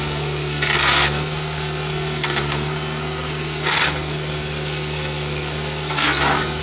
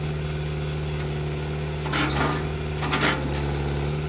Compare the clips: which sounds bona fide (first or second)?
second